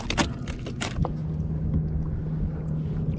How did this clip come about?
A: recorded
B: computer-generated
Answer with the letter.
A